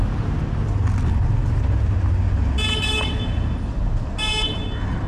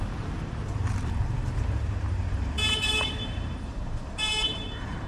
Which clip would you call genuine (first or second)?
first